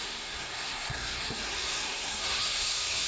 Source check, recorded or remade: remade